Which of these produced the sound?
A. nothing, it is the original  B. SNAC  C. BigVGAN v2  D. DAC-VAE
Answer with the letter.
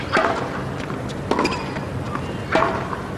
A